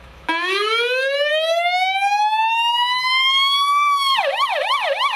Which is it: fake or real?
fake